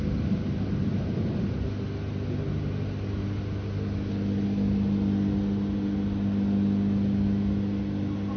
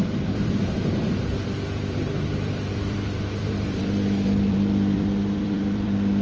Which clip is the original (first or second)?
first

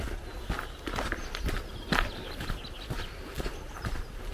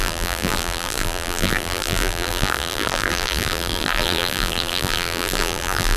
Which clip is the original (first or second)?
first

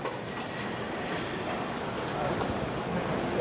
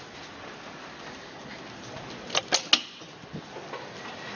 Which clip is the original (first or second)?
second